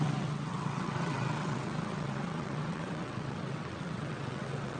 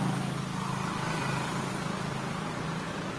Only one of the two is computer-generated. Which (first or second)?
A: first